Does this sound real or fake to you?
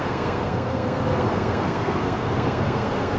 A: fake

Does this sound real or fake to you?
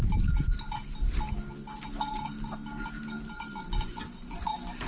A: real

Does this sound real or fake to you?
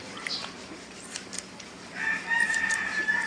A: fake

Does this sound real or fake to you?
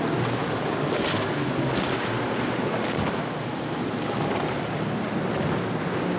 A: real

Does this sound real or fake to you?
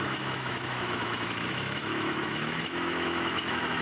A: fake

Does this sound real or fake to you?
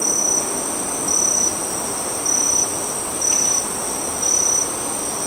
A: real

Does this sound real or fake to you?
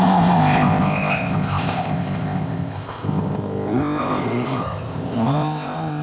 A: fake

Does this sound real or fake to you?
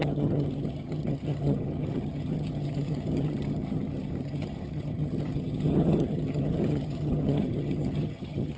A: fake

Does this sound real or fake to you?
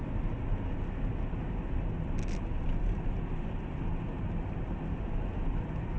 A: real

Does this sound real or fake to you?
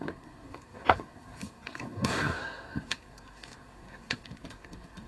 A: fake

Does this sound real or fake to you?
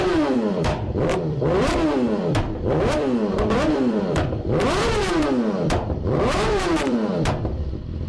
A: fake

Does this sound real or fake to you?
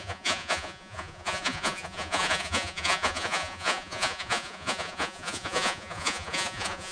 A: fake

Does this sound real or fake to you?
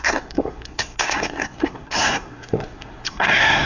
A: fake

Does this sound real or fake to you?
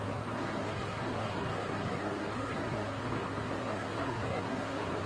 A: fake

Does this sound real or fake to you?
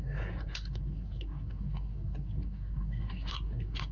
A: fake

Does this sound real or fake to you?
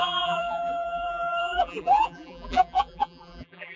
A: fake